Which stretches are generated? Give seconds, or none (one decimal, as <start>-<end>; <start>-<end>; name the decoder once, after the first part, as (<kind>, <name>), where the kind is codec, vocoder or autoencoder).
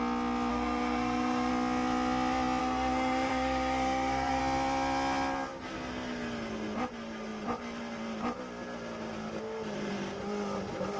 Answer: 0.5-1.5 (codec, SNAC); 2.6-4.4